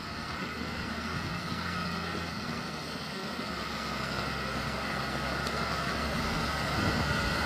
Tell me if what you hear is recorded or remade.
remade